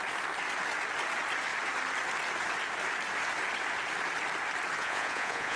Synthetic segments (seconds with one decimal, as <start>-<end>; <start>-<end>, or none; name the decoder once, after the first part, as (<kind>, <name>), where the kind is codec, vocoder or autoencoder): 4.8-5.6 (vocoder, Vocos)